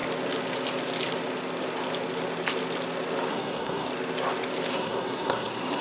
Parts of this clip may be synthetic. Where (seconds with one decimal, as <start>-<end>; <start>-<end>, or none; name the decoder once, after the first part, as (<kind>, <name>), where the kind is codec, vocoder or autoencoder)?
3.3-3.9 (codec, SNAC); 4.7-5.8